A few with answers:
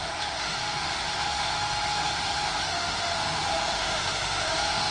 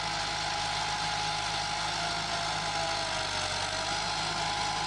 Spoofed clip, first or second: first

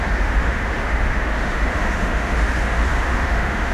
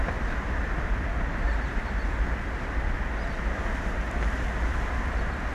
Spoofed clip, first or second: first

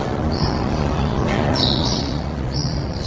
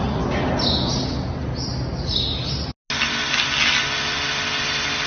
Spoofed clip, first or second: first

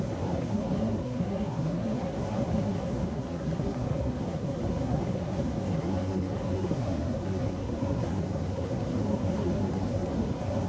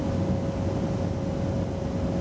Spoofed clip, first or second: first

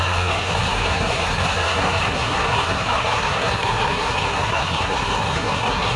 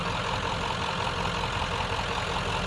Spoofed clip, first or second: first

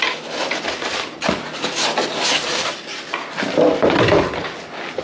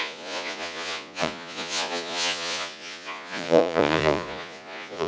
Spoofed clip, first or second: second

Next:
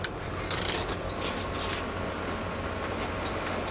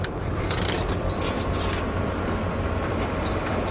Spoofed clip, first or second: second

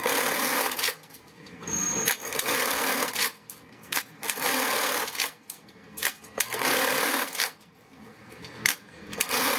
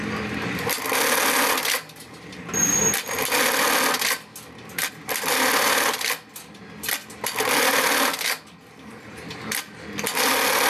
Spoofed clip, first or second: first